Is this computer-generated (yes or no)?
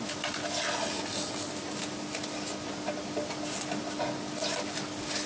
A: no